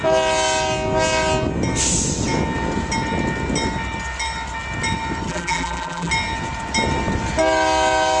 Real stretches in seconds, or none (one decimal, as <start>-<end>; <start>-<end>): 0.0-5.3; 6.1-8.2